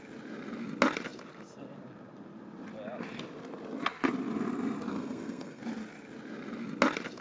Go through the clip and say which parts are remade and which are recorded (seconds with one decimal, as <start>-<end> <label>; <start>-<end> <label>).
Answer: 0.0-4.9 recorded; 4.9-5.6 remade; 5.6-7.2 recorded